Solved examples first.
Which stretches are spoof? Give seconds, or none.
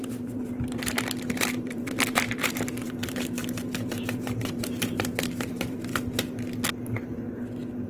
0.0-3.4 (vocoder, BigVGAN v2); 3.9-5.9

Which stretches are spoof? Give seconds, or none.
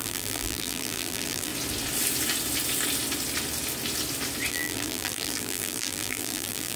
0.0-1.5 (vocoder, BigVGAN v2); 4.5-6.8